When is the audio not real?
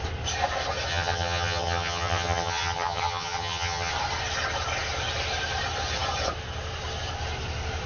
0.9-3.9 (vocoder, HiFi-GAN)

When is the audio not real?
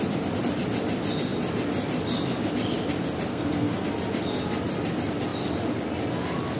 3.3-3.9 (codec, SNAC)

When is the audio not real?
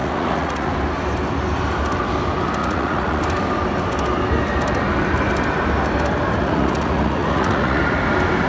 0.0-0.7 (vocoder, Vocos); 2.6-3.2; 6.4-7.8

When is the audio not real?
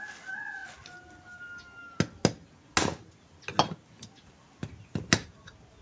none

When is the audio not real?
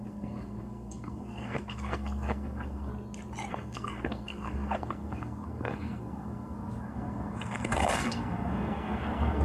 0.0-2.9 (codec, SNAC); 3.5-9.4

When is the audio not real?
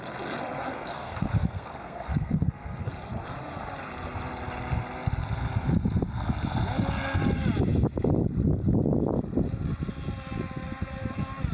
0.7-2.9 (codec, SNAC)